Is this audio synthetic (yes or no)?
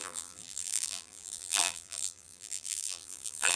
yes